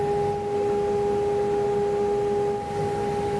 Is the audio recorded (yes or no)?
yes